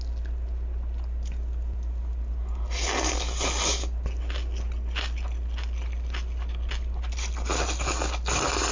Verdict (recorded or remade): recorded